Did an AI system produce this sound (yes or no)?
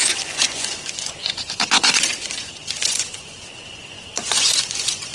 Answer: yes